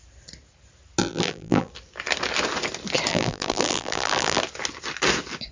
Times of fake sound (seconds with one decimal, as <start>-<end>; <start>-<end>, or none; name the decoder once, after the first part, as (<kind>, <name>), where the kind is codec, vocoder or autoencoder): 1.0-1.7 (vocoder, BigVGAN v2); 3.1-4.4